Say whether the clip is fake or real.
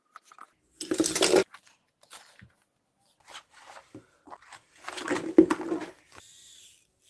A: real